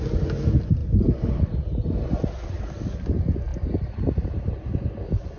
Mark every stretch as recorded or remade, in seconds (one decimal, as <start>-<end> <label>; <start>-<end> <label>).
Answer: 0.0-5.4 recorded